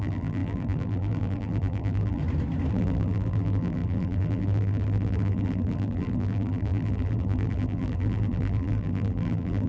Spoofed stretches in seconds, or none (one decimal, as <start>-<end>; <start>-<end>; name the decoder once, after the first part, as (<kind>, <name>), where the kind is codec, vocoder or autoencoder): 0.0-2.2 (vocoder, BigVGAN v2); 2.7-9.7